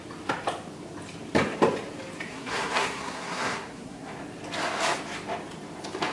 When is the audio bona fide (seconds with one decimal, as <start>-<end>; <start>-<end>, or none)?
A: 0.0-2.3; 4.1-6.1